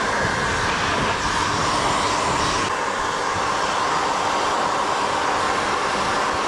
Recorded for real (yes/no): yes